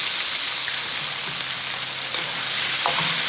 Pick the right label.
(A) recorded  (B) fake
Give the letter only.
A